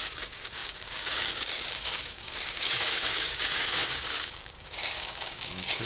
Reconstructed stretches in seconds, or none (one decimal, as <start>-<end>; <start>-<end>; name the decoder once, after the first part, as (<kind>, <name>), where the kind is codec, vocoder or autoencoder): 0.0-5.9 (codec, DAC)